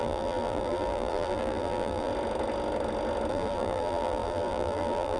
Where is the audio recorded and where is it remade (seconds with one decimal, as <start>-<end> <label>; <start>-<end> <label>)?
0.0-2.1 remade; 2.1-3.3 recorded; 3.3-5.2 remade